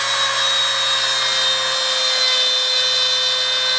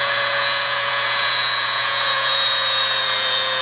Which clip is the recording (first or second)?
first